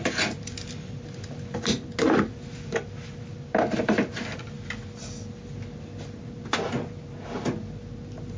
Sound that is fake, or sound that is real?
real